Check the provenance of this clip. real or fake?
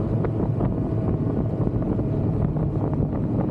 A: real